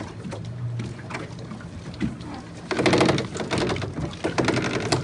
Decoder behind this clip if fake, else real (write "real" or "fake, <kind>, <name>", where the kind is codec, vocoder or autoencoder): real